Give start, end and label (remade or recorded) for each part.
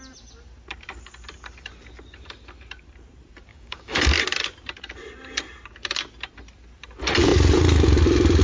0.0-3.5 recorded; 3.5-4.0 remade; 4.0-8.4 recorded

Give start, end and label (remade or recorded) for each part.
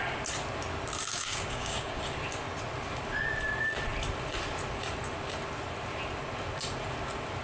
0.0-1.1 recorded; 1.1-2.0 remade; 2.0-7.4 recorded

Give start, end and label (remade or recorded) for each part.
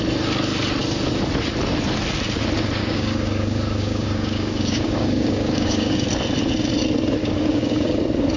0.0-2.8 recorded; 2.8-6.1 remade; 6.1-7.2 recorded; 7.2-8.0 remade; 8.0-8.4 recorded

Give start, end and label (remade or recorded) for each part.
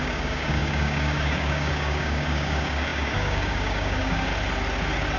0.0-4.3 remade; 4.3-5.2 recorded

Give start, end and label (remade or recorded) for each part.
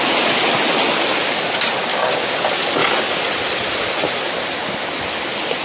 0.0-1.9 recorded; 1.9-2.4 remade; 2.4-5.6 recorded